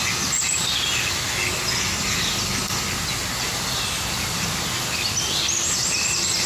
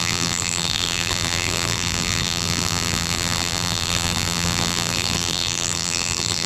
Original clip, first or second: first